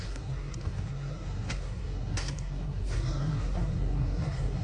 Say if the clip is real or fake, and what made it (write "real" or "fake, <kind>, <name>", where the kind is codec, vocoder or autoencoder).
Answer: fake, codec, SNAC